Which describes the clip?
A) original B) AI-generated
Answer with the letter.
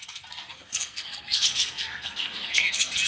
B